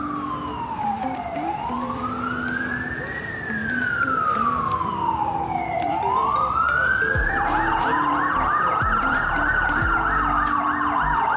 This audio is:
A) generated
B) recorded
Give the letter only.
A